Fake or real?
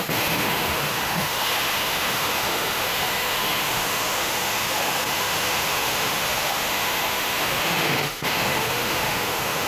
fake